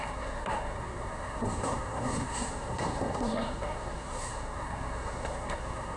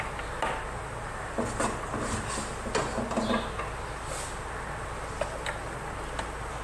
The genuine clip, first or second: second